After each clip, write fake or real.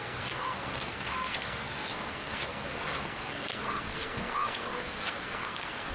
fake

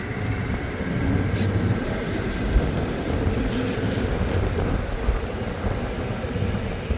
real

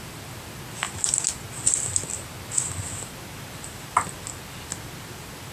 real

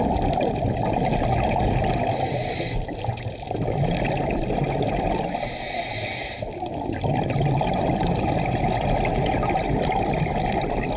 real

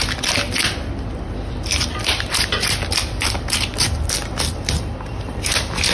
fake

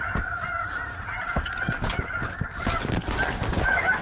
real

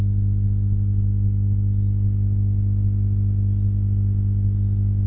real